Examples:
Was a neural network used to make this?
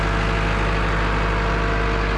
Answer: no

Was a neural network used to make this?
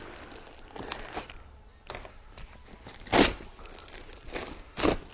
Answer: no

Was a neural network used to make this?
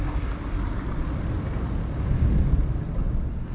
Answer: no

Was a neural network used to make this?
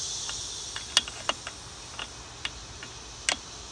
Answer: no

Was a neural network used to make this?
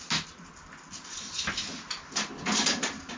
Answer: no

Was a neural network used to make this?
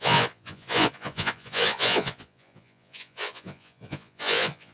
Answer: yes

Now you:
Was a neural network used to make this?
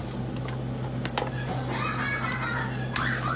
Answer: no